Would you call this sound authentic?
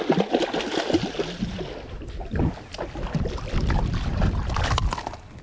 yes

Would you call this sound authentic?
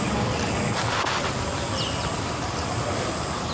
yes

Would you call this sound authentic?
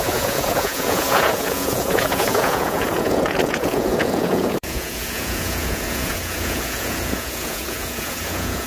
no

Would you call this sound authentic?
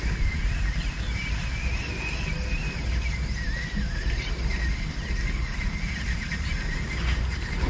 yes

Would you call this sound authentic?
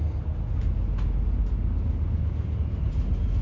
yes